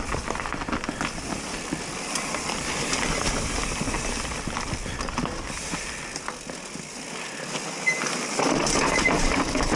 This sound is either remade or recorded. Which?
recorded